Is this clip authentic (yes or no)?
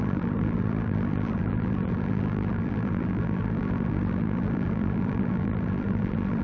no